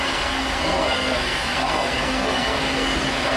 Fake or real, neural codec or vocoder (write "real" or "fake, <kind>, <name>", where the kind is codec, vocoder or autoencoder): fake, codec, SNAC